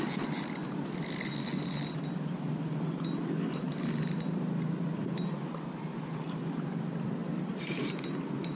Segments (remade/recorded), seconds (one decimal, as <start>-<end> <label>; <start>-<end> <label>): 0.0-8.6 remade